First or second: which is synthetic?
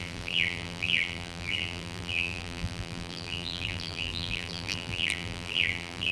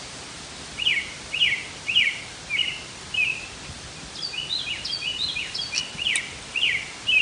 first